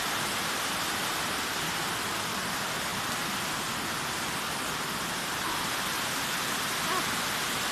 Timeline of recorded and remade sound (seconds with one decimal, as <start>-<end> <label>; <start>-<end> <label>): 0.0-7.7 recorded